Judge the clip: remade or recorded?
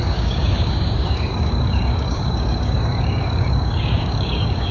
remade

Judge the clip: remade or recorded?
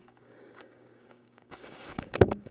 remade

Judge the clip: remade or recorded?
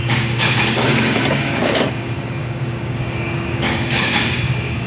remade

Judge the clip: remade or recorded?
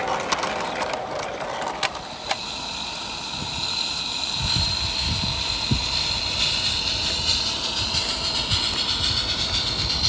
recorded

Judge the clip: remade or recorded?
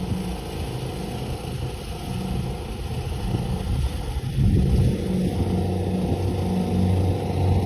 recorded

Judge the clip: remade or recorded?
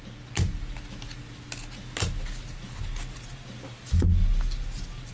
recorded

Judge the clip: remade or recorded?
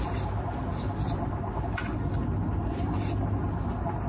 recorded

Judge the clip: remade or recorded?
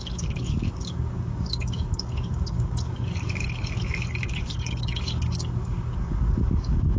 remade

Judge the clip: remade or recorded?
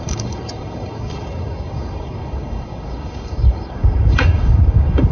remade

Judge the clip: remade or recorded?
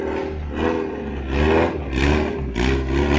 recorded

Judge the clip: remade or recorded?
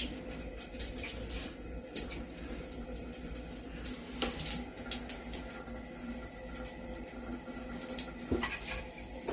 recorded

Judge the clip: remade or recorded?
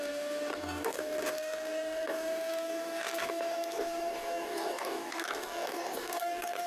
remade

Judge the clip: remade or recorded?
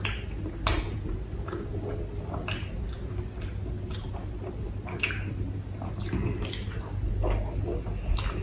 recorded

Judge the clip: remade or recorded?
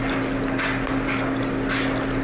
recorded